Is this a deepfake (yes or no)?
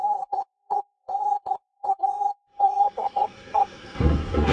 yes